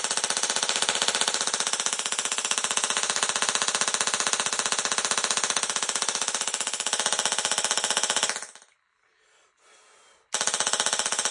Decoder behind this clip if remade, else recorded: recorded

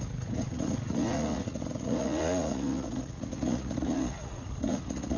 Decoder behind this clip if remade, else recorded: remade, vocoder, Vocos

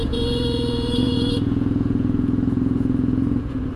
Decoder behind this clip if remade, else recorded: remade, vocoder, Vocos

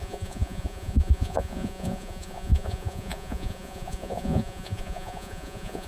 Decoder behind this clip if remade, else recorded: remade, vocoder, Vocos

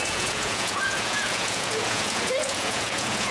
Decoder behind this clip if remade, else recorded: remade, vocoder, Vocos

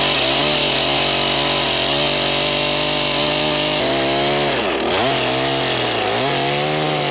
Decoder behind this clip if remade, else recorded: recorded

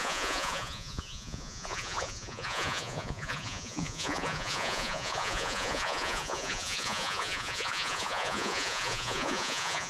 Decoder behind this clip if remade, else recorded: remade, vocoder, Vocos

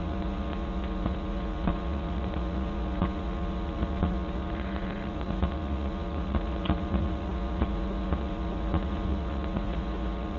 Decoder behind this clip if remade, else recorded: remade, vocoder, Vocos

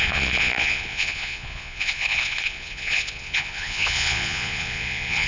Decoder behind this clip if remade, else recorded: remade, vocoder, Vocos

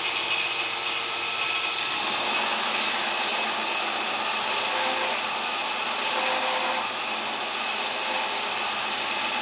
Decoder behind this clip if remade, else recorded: recorded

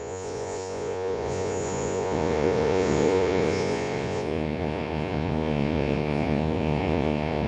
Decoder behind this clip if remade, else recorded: remade, vocoder, Vocos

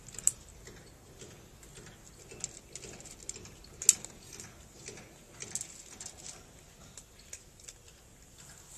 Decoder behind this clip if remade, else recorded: recorded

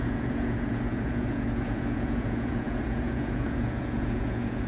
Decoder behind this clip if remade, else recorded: remade, vocoder, Vocos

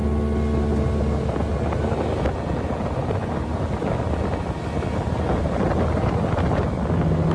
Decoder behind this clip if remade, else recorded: recorded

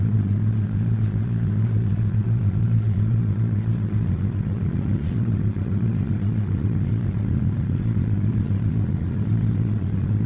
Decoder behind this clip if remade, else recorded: remade, vocoder, Vocos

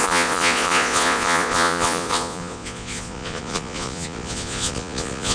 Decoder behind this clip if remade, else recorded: remade, vocoder, Vocos